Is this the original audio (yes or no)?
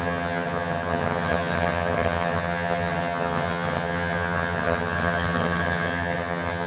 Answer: no